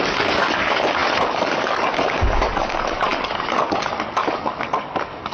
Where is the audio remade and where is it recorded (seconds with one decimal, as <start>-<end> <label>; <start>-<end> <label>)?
0.0-5.3 remade